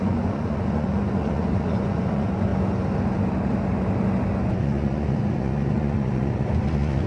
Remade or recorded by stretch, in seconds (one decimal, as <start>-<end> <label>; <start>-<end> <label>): 0.0-2.5 remade; 2.5-4.5 recorded; 4.5-7.1 remade